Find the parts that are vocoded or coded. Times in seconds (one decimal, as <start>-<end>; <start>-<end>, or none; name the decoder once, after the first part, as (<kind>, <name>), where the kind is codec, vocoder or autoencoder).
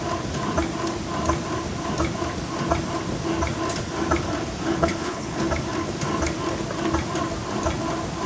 4.8-5.4 (codec, HILCodec)